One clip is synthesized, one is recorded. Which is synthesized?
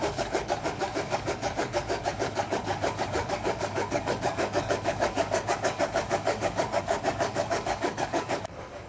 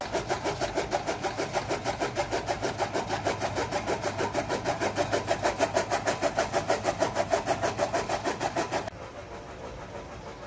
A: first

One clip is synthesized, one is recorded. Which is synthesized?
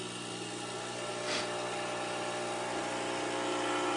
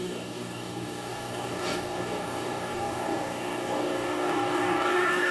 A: second